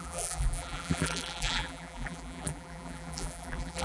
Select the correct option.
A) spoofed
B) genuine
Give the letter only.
A